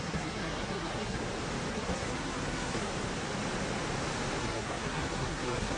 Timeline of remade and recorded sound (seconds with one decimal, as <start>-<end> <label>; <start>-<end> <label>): 0.0-1.2 remade; 1.2-1.7 recorded; 1.7-2.9 remade; 2.9-4.4 recorded; 4.4-5.8 remade